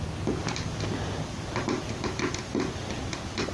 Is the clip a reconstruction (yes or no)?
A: no